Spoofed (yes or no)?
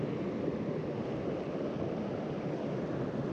no